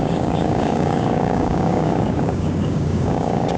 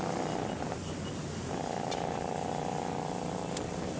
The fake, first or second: first